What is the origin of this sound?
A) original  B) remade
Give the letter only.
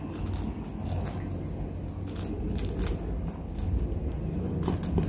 A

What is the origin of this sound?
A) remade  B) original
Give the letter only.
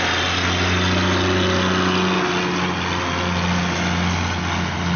B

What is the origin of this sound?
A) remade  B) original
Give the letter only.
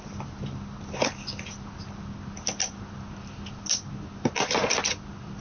B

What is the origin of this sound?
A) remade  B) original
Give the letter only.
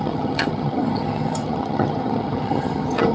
A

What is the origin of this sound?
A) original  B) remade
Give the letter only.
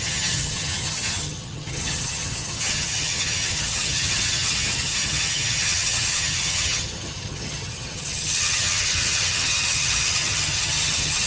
B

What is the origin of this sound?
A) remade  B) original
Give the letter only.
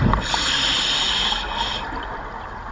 B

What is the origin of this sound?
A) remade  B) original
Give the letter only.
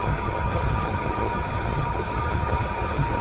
A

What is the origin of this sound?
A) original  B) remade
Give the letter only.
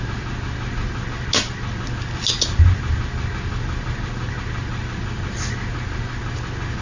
A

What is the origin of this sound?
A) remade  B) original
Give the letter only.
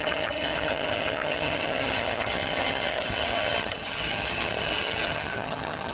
A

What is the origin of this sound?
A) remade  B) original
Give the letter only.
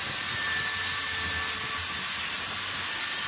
B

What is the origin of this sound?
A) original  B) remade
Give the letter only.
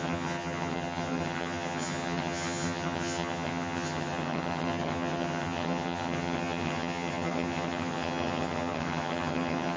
B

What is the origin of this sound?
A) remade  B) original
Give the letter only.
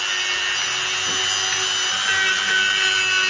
B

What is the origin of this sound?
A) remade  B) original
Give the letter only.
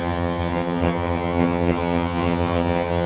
A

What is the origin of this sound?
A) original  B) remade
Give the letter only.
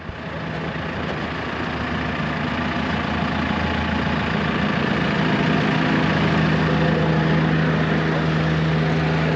A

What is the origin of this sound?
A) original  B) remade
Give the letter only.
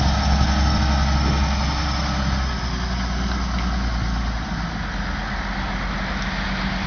A